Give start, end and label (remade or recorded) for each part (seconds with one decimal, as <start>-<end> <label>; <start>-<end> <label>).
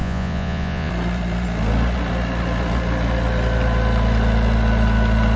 0.0-0.9 remade; 0.9-5.4 recorded